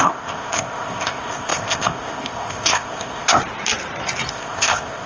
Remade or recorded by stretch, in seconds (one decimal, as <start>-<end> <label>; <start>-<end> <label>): 0.0-3.4 remade; 3.4-4.3 recorded; 4.3-5.1 remade